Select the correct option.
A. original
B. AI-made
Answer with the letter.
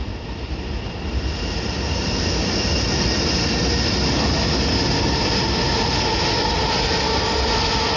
A